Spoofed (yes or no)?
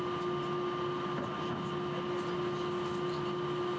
no